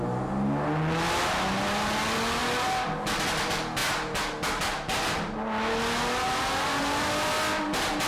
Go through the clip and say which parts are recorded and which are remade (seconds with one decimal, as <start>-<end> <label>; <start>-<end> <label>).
0.0-8.1 recorded